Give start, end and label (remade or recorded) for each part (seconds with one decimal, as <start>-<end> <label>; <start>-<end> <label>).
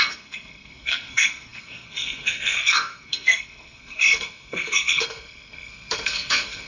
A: 0.0-6.7 remade